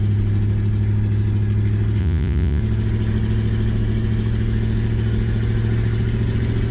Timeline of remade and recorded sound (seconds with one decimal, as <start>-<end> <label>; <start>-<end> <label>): 0.0-2.0 recorded; 2.0-2.6 remade; 2.6-6.7 recorded